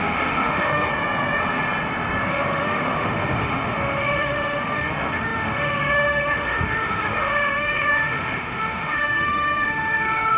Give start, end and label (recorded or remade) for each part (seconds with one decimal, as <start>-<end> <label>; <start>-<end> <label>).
0.0-0.9 remade; 0.9-2.3 recorded; 2.3-10.4 remade